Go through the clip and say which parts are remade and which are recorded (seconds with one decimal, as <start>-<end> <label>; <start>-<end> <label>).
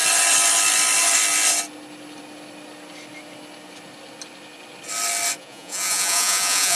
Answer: 0.0-5.4 recorded; 5.4-6.8 remade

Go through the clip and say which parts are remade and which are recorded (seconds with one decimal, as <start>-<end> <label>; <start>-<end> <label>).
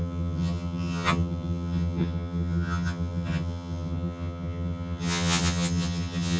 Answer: 0.0-6.4 remade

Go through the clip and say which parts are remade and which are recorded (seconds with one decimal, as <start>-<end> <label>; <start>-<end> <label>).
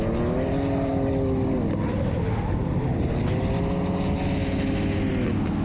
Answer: 0.0-5.6 recorded